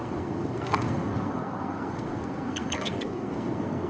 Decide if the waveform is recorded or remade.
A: remade